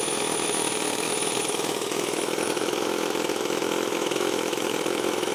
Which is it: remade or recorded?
remade